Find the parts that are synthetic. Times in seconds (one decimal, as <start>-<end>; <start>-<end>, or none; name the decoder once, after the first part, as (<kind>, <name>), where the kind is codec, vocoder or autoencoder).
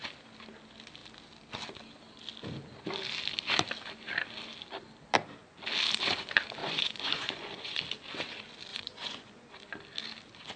6.6-7.8 (vocoder, Vocos); 8.7-9.5